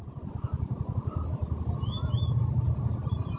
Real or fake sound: real